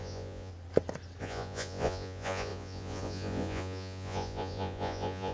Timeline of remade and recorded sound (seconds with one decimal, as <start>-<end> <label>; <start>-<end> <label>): 0.0-0.5 remade; 0.5-1.2 recorded; 1.2-5.3 remade